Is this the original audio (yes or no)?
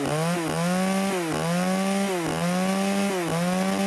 yes